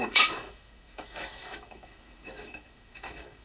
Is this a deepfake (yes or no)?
yes